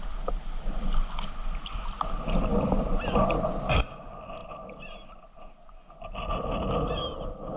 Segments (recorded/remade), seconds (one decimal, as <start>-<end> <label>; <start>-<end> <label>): 0.0-7.6 recorded